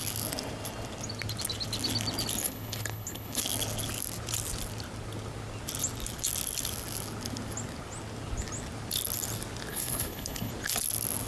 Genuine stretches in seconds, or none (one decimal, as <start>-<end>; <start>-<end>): 0.0-2.4; 3.4-9.7; 10.5-11.3